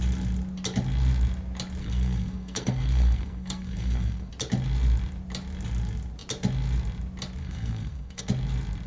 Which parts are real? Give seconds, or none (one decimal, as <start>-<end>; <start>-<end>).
0.0-1.8; 4.3-7.4; 8.2-8.9